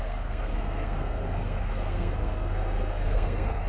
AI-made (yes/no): yes